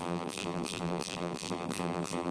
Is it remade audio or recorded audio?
remade